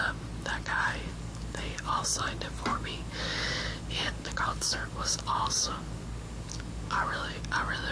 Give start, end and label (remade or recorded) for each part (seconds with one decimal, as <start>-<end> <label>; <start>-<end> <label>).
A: 0.0-1.1 recorded; 1.1-2.0 remade; 2.0-2.7 recorded; 2.7-7.4 remade; 7.4-7.9 recorded